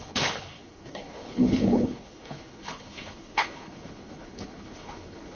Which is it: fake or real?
fake